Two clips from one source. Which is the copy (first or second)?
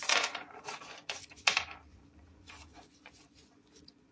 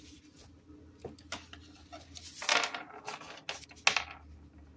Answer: first